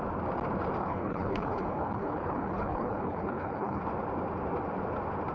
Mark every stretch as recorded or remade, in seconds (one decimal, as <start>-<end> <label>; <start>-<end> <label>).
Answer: 0.0-0.8 recorded; 0.8-3.8 remade; 3.8-5.3 recorded